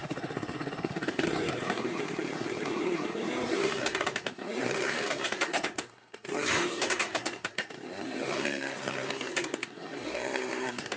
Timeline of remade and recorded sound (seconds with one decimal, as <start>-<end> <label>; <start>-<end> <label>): 0.0-11.0 remade